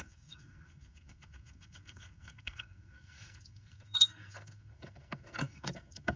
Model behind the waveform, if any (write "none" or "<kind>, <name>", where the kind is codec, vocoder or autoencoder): codec, SNAC